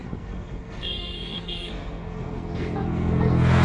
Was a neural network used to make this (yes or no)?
yes